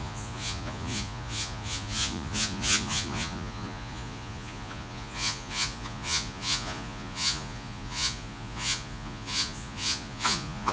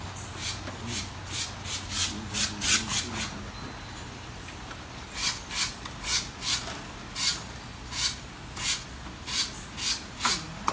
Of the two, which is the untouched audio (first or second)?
second